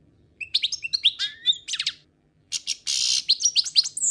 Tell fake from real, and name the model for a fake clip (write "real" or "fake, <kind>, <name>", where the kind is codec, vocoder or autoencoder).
real